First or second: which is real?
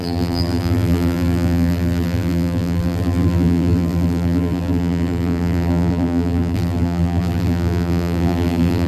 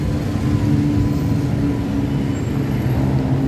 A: second